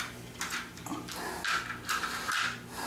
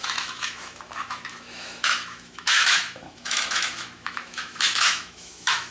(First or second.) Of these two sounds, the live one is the first